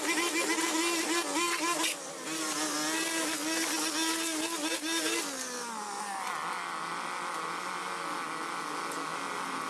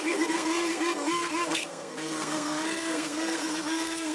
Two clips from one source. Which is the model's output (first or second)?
second